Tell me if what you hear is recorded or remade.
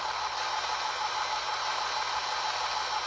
recorded